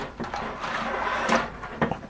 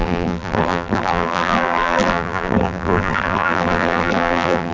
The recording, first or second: first